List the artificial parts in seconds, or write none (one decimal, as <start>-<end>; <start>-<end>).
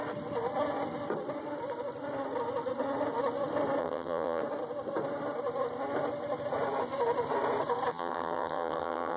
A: 3.8-4.4; 7.9-9.2